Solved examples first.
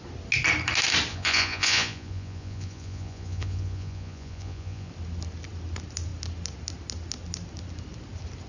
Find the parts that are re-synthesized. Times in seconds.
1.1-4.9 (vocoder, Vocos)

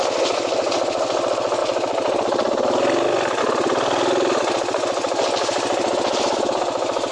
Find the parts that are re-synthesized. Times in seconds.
none

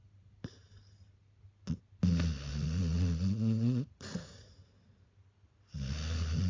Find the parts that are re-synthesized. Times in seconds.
2.5-4.7 (vocoder, Vocos)